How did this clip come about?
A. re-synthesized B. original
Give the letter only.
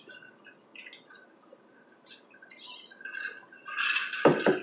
B